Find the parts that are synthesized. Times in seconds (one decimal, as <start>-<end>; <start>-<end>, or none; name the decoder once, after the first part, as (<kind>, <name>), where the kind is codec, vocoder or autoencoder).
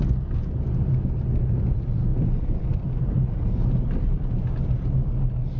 2.1-3.1 (vocoder, BigVGAN v2)